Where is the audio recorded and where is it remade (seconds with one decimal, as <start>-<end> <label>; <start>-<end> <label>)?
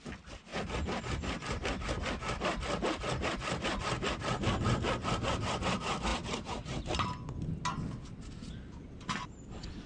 0.0-9.9 recorded